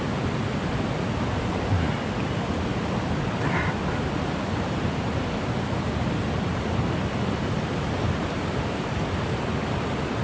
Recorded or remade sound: recorded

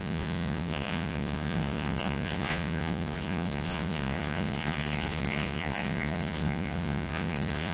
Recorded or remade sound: remade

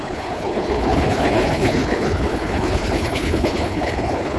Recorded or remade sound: remade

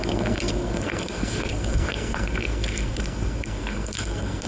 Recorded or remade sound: remade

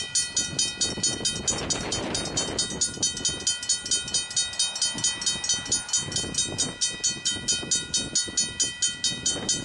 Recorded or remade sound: recorded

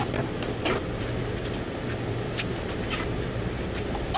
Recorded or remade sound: recorded